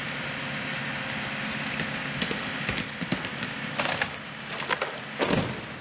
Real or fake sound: real